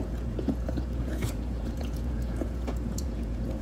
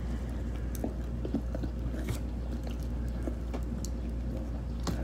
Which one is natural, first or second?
second